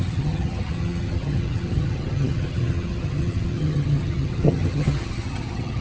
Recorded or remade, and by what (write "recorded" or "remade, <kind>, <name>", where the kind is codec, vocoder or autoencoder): remade, vocoder, HiFi-GAN